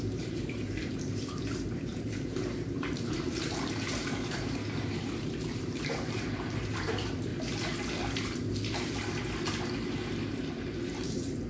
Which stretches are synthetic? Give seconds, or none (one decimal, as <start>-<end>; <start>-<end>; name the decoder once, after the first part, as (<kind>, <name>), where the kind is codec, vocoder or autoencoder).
0.0-7.3 (vocoder, BigVGAN v2); 10.8-11.5